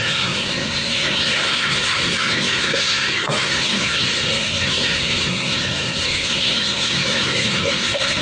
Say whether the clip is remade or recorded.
remade